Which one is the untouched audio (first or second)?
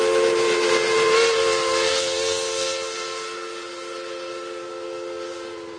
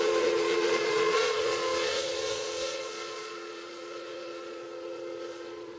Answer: first